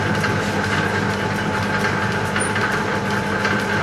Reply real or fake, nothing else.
real